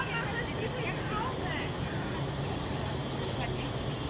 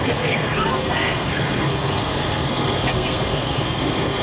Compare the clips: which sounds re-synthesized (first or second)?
second